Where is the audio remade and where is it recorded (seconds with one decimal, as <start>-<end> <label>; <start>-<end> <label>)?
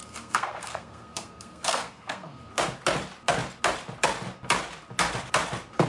0.0-2.5 remade; 2.5-5.9 recorded